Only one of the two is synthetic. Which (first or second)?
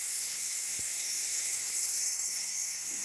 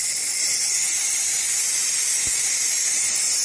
first